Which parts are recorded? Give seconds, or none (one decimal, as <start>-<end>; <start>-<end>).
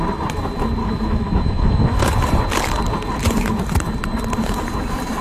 0.0-0.8; 2.0-5.2